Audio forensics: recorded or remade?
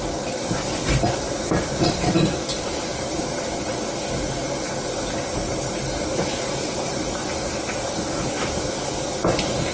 recorded